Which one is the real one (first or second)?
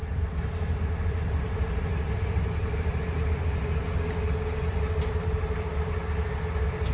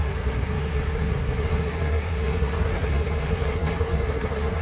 first